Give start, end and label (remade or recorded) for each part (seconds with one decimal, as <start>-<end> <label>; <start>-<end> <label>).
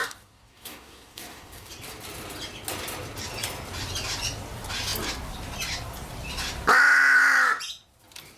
0.0-1.7 remade; 1.7-8.4 recorded